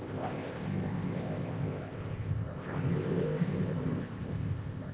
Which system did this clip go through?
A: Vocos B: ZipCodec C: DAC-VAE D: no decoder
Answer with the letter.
B